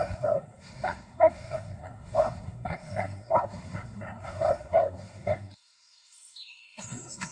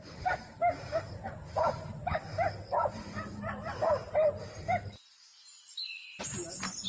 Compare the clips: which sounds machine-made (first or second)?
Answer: first